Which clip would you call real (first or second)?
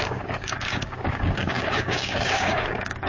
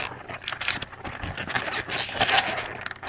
second